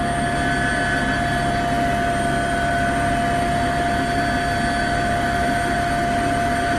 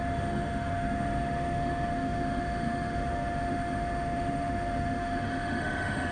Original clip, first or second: first